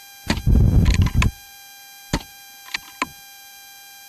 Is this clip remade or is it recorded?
recorded